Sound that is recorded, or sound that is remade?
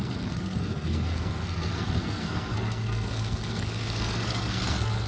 remade